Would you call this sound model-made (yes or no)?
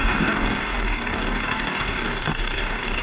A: yes